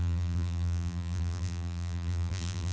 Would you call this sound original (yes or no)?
no